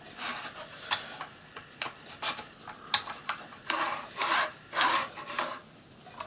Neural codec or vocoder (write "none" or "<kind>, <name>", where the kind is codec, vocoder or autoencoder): none